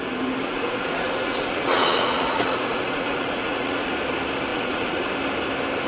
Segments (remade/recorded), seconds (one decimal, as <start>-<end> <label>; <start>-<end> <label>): 0.0-0.4 recorded; 0.4-3.9 remade; 3.9-4.5 recorded; 4.5-5.1 remade; 5.1-5.9 recorded